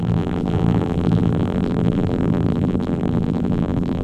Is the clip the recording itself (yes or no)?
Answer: no